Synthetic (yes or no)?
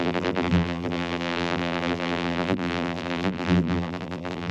yes